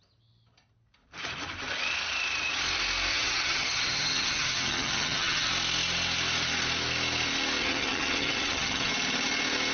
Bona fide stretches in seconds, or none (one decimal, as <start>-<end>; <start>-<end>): 0.0-3.1; 5.5-7.6; 8.9-9.7